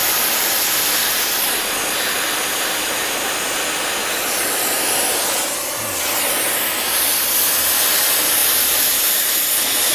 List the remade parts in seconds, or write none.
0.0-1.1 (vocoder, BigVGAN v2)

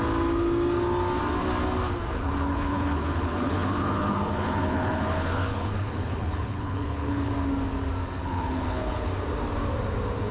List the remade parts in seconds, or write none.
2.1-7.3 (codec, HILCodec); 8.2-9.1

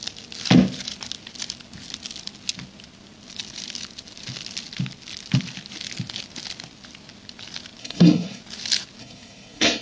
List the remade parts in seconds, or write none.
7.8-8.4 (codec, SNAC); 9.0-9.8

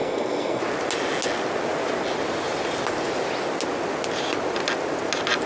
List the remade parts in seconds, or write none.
0.0-0.6 (codec, SNAC)